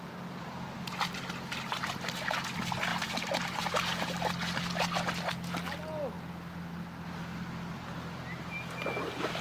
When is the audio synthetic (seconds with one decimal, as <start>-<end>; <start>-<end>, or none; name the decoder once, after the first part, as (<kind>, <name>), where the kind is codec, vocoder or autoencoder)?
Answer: none